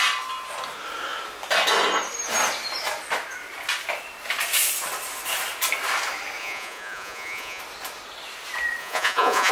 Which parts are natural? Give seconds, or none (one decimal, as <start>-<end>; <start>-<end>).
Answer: 0.0-6.4; 7.6-8.8

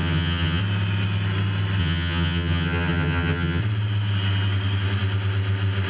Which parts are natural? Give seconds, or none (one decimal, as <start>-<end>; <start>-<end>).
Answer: 0.6-1.8; 3.6-5.9

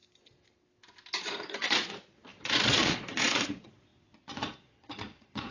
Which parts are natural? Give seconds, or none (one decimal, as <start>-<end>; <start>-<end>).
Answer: 0.0-1.2

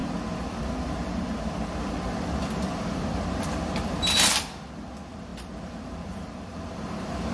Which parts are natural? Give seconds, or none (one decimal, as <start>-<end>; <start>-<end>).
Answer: none